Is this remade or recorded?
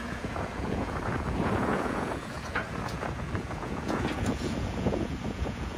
remade